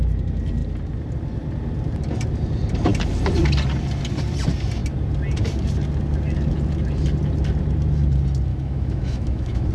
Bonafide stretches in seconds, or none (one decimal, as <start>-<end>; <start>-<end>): 0.0-8.5